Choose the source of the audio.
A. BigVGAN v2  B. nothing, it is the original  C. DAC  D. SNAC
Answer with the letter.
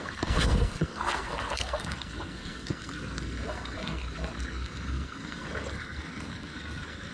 D